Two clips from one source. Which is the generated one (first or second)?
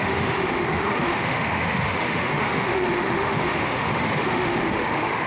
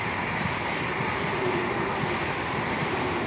first